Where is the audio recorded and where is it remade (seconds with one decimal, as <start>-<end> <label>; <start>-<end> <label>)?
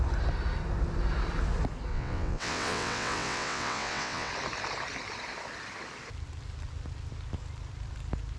0.0-1.9 recorded; 1.9-4.3 remade; 4.3-8.4 recorded